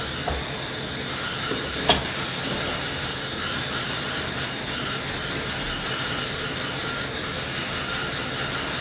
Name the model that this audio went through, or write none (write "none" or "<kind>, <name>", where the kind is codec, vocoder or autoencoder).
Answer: none